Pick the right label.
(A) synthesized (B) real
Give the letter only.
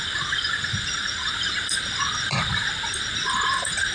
B